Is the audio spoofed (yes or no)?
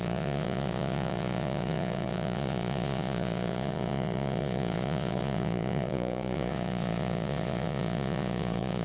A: yes